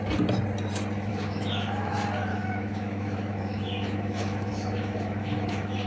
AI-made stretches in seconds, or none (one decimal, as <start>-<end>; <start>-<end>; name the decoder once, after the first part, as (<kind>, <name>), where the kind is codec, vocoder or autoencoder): 1.1-1.9 (autoencoder, DAC-VAE); 2.3-5.9